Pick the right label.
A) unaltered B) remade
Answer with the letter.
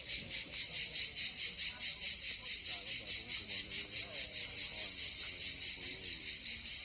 B